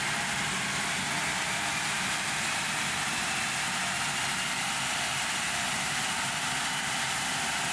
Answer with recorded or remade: recorded